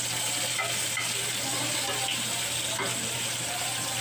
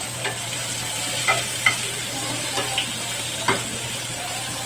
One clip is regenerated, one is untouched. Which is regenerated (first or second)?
second